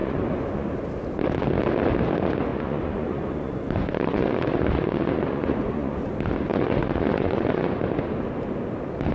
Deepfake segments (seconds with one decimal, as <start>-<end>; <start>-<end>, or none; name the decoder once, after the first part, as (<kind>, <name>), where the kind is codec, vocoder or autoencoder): 0.0-0.7 (vocoder, Vocos); 2.5-6.1; 6.5-7.8